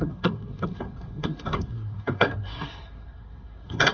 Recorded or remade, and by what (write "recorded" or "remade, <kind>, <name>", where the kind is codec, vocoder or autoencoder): remade, codec, SNAC